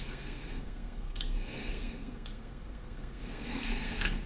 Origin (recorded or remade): remade